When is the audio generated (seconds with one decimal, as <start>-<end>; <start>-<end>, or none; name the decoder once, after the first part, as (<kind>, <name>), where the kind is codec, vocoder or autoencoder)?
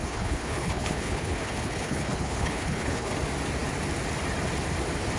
0.0-3.1 (codec, HILCodec)